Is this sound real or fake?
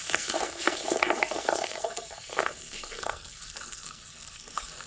fake